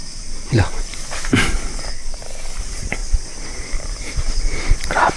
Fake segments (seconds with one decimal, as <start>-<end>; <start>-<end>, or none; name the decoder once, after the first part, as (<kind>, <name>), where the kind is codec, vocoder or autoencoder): 0.8-1.9 (vocoder, BigVGAN v2); 2.6-5.2